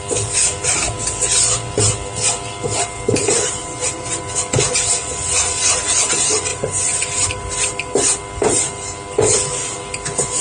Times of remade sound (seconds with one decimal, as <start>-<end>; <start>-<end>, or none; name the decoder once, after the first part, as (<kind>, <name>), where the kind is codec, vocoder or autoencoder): 3.6-4.2 (vocoder, BigVGAN v2); 6.5-8.0